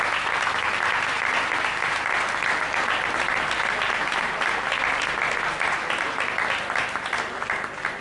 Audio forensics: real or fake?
real